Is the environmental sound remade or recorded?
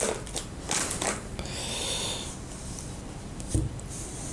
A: recorded